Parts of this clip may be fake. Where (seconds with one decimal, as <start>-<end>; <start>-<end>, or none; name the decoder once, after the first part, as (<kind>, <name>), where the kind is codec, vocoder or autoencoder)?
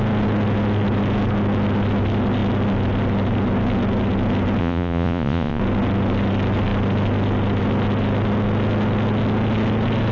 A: 4.6-5.6 (vocoder, Vocos)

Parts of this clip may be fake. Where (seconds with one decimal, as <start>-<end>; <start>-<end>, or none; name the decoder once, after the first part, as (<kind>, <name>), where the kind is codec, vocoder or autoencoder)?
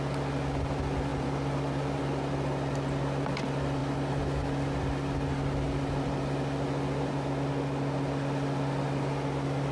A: none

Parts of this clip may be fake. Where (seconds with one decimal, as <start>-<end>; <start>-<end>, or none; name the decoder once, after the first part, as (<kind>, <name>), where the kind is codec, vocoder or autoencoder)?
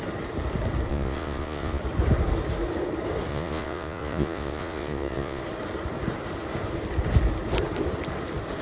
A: 0.9-1.8 (vocoder, Vocos); 3.3-5.4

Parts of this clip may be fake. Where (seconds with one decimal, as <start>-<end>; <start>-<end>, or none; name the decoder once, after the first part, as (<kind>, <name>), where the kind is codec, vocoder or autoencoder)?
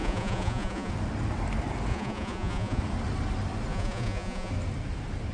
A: 0.0-0.9 (vocoder, Vocos); 1.9-2.8; 3.7-4.5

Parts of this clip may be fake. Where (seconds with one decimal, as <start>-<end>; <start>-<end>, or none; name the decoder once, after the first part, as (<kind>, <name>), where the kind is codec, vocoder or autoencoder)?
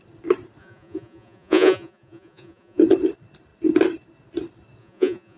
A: 0.6-2.8 (vocoder, Vocos); 4.8-5.4